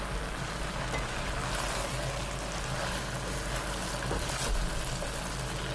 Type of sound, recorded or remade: recorded